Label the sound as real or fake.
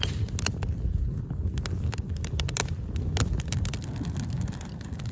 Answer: real